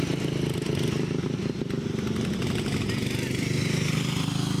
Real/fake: real